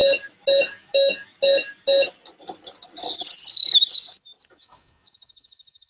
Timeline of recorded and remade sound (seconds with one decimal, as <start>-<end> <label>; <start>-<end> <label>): 0.0-0.6 recorded; 0.6-1.3 remade; 1.3-4.5 recorded; 4.5-5.9 remade